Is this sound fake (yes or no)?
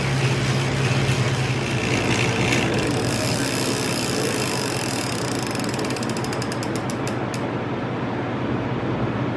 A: no